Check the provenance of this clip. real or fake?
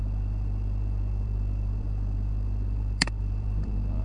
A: fake